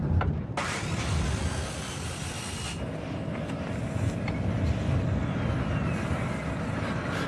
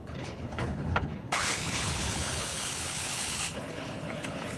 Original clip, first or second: first